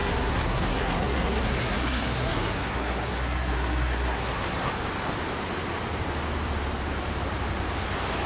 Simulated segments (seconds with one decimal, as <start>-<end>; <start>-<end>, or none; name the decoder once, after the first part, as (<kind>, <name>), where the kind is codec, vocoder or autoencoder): 0.0-4.7 (codec, SNAC)